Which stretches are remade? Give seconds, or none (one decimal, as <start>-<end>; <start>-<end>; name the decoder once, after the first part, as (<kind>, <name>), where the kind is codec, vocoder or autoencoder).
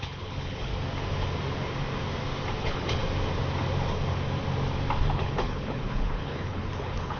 0.0-0.7 (codec, HILCodec); 2.6-3.0; 5.1-7.2